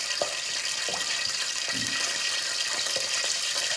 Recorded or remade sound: recorded